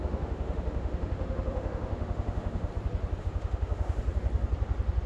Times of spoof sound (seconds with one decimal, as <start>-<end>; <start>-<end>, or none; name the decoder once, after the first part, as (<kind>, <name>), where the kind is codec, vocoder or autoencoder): 0.0-2.7 (autoencoder, DAC-VAE); 3.2-4.0